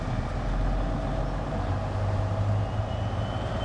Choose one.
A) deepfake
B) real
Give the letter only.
B